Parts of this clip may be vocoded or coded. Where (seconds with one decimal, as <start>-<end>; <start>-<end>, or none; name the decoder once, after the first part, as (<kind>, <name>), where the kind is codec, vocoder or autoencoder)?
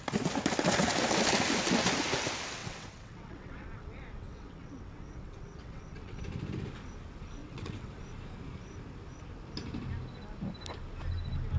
2.6-6.2 (vocoder, WaveNeXt); 7.4-8.0